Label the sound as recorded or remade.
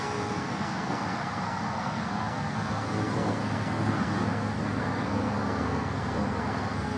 remade